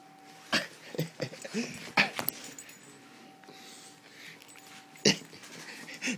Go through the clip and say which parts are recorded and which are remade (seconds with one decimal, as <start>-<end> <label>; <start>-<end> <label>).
0.0-6.2 recorded